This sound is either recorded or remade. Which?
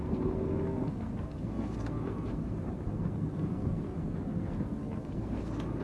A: remade